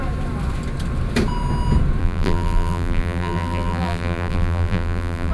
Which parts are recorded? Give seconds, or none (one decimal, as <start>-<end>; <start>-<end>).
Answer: 0.0-2.0